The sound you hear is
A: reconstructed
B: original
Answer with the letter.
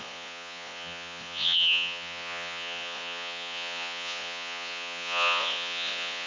A